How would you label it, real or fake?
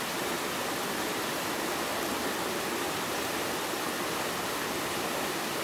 real